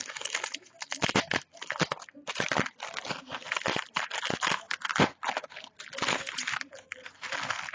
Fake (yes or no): no